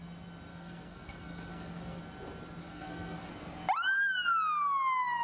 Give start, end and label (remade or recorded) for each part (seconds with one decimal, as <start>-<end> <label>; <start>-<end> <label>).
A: 0.0-0.5 recorded; 0.5-2.0 remade; 2.0-2.6 recorded; 2.6-3.3 remade; 3.3-5.2 recorded